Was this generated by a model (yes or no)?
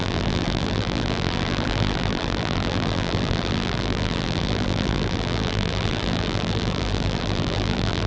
yes